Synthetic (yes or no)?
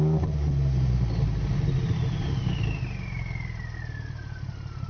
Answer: no